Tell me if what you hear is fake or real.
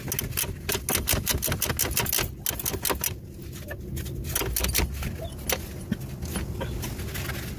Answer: real